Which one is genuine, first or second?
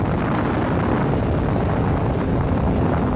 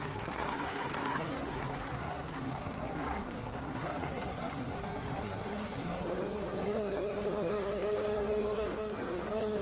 first